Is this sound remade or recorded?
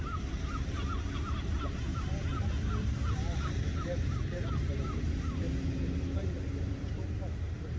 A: remade